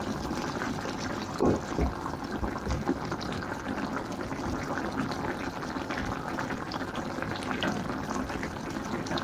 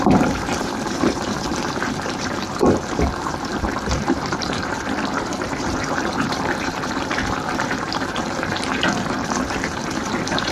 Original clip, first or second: first